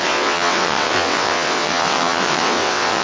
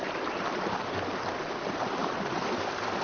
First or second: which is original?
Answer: second